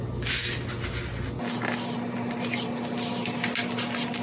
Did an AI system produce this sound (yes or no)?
no